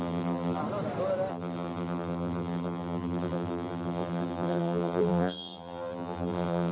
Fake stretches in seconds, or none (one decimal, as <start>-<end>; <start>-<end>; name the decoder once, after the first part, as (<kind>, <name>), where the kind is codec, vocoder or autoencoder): 0.0-0.6 (vocoder, BigVGAN v2); 1.3-6.7